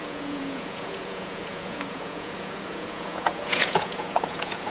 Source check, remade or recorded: remade